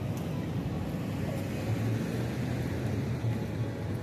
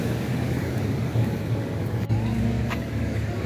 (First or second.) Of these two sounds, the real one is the first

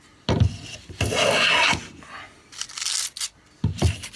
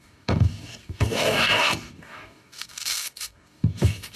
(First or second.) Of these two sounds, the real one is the first